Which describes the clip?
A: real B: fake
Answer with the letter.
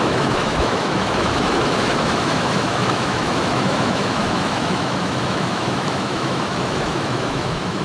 B